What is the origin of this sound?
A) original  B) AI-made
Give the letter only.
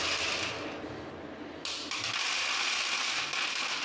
A